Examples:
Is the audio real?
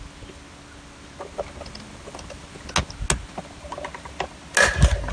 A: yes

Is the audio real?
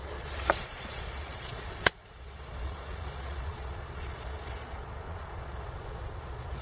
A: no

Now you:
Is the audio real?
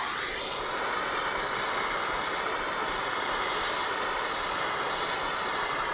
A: yes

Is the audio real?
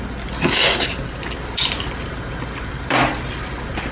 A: yes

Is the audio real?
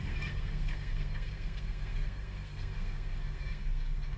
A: no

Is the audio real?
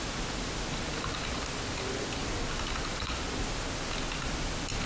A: yes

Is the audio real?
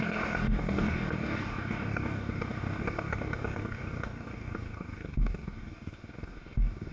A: no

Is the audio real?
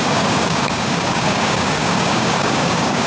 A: no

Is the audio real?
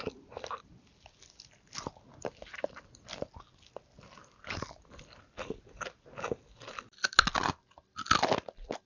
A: yes